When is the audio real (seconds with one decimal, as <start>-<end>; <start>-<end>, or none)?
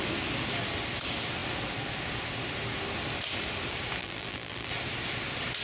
0.0-4.0; 4.7-5.6